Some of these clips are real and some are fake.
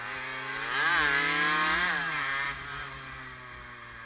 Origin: real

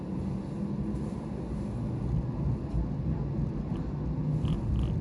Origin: real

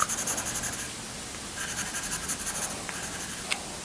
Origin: real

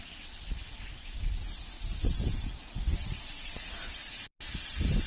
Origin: real